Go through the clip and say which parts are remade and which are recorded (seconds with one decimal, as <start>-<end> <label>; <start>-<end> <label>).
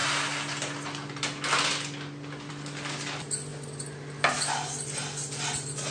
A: 0.0-5.9 recorded